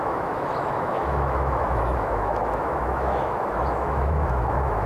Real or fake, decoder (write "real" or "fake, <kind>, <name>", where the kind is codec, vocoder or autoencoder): fake, autoencoder, DAC-VAE